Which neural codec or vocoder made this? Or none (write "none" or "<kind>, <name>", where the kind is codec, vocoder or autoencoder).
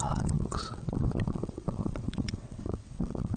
vocoder, WaveNeXt